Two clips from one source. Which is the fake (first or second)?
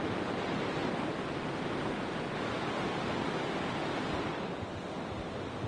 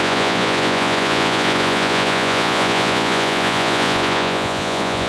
second